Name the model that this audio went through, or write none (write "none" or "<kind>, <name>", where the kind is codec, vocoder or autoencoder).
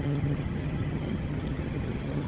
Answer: vocoder, HiFi-GAN